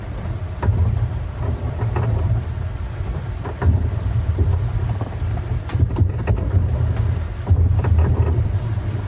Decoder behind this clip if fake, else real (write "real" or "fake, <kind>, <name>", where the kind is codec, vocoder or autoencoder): fake, vocoder, BigVGAN v2